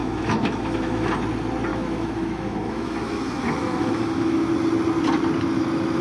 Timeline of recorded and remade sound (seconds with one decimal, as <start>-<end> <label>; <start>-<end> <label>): 0.0-1.1 remade; 1.1-1.7 recorded; 1.7-4.5 remade; 4.5-6.0 recorded